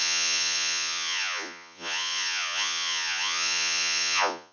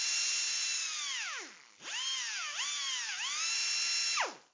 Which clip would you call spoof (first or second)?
first